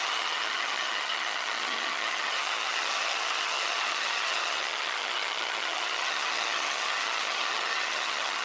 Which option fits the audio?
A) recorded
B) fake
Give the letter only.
B